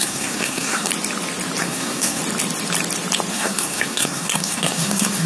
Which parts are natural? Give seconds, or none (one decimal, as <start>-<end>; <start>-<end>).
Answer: 0.9-1.6; 2.2-3.3